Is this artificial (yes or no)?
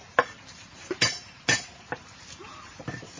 yes